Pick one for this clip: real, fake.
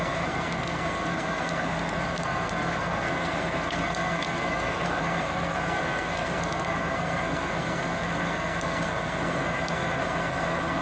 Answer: fake